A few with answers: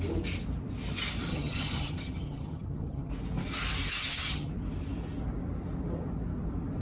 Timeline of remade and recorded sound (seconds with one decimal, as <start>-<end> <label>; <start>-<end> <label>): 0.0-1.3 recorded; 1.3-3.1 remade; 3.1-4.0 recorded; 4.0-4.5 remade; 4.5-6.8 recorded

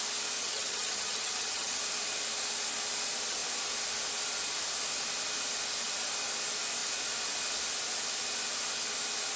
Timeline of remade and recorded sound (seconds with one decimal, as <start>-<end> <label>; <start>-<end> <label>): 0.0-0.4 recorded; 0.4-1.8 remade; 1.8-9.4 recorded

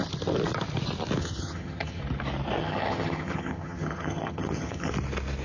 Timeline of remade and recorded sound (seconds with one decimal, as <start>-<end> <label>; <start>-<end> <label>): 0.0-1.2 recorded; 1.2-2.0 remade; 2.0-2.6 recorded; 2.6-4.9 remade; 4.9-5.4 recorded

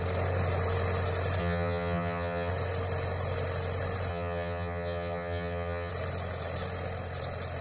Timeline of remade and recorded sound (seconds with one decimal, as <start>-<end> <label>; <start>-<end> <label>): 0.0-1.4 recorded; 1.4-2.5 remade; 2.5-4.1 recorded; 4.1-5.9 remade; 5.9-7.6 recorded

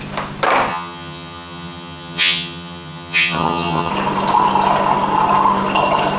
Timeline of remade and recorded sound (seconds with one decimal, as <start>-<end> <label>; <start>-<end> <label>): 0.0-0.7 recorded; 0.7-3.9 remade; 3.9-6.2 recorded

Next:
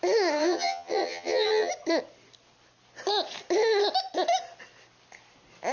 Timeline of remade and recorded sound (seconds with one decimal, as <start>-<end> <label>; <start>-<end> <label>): 0.0-0.4 recorded; 0.4-1.7 remade; 1.7-5.7 recorded